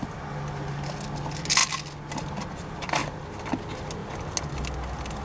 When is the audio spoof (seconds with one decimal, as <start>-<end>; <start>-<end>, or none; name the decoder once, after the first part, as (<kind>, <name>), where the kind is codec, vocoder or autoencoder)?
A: none